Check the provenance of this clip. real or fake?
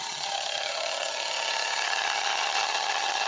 fake